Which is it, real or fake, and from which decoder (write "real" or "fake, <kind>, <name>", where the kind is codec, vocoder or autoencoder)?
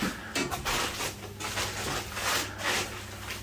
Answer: real